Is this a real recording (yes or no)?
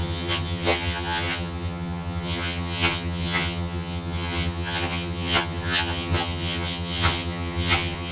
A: no